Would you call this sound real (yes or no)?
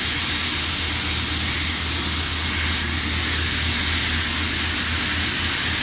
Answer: yes